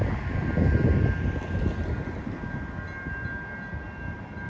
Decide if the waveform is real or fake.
real